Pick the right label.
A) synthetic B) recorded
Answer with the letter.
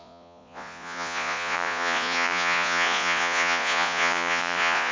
A